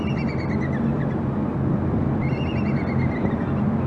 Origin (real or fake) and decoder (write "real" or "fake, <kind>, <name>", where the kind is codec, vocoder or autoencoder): real